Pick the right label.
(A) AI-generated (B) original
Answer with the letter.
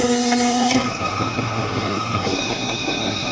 A